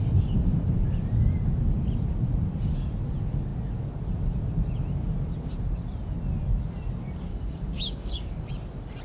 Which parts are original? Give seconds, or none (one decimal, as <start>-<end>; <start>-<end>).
0.0-7.3; 8.5-9.0